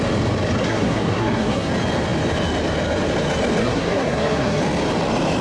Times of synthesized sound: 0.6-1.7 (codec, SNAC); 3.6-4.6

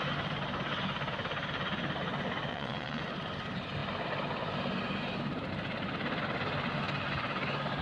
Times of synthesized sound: 2.5-3.0 (vocoder, Vocos)